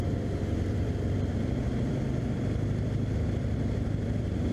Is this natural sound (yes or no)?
no